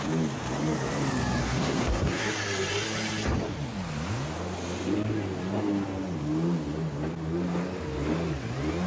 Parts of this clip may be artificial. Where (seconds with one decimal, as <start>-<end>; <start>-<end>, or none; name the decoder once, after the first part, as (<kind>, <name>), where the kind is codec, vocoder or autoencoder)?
1.4-2.3 (codec, SNAC)